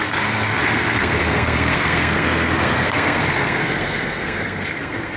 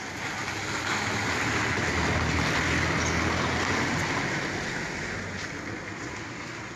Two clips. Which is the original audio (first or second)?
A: second